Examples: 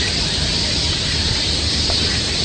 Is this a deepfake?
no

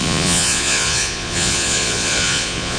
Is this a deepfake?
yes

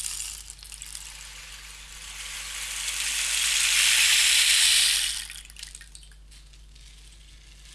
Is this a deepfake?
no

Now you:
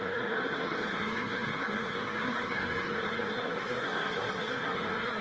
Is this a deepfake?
yes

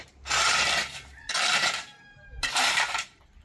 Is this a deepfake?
yes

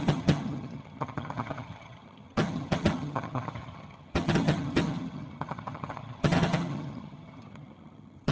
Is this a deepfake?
yes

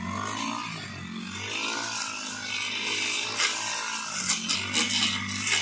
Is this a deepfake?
no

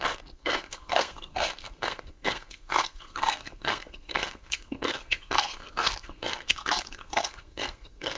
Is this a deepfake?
yes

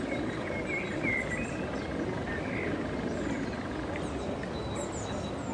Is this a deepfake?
no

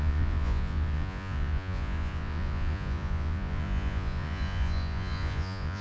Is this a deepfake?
yes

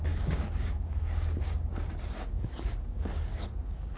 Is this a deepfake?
yes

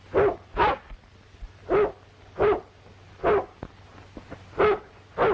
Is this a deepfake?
no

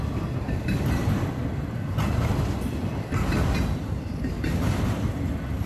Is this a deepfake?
yes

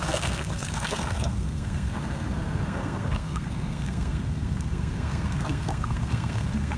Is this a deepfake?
yes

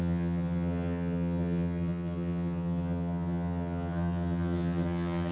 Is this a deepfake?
yes